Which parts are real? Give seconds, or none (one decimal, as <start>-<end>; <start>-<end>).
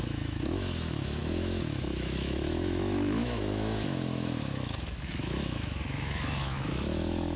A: none